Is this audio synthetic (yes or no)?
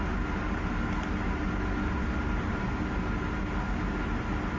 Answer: no